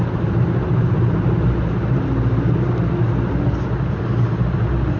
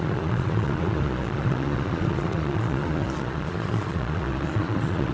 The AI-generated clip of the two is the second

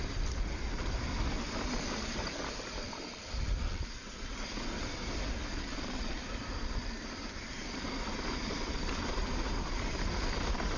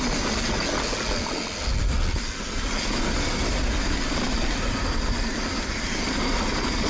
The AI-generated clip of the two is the first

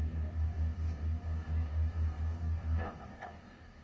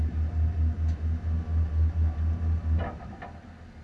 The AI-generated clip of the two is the first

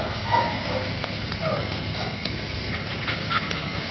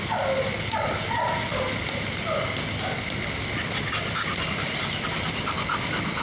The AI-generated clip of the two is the first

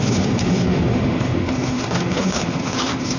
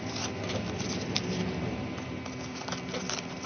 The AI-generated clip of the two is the first